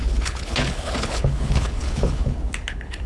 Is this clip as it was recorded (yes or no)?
no